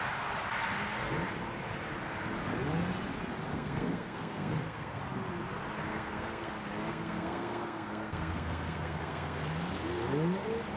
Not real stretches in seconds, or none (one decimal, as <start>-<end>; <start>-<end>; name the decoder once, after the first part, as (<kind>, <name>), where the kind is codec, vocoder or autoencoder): 3.5-5.0 (codec, SNAC); 5.9-6.5; 6.9-9.4